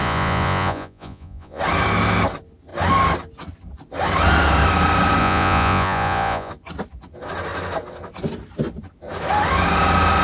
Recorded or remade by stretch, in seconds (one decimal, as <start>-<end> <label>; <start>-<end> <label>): 0.0-1.6 remade; 1.6-5.2 recorded; 5.2-6.5 remade; 6.5-10.2 recorded

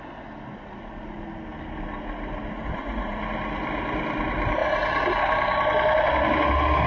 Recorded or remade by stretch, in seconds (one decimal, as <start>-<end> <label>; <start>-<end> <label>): 0.0-2.6 recorded; 2.6-3.2 remade; 3.2-4.6 recorded; 4.6-5.2 remade; 5.2-6.9 recorded